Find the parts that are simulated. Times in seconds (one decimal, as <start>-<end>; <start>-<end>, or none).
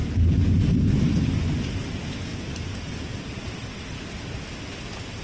0.0-0.6; 2.3-3.4